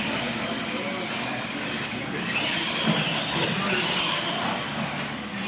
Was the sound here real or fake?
real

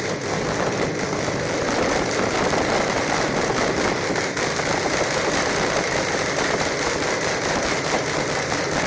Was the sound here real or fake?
real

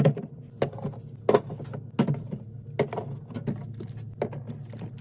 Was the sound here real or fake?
real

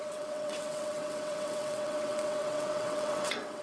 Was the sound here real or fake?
fake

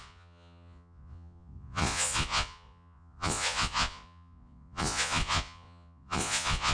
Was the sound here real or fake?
fake